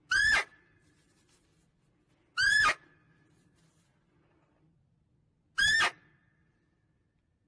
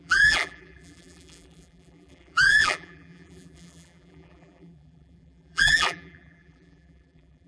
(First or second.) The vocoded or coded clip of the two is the second